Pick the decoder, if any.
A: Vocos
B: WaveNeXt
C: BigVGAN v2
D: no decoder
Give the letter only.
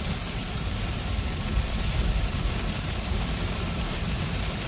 C